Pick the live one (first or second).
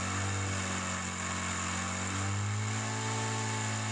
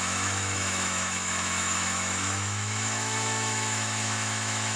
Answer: first